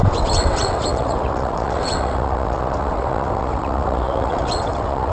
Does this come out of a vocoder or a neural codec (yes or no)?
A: yes